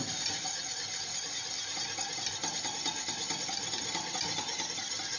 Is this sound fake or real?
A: real